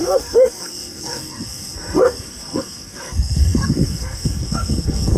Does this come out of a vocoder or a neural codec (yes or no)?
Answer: yes